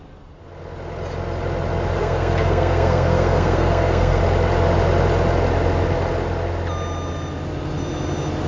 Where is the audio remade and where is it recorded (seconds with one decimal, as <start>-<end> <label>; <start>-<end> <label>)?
0.0-2.0 recorded; 2.0-4.2 remade; 4.2-8.5 recorded